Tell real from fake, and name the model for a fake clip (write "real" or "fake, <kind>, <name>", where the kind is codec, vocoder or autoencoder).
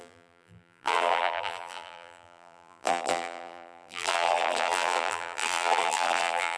fake, vocoder, BigVGAN v2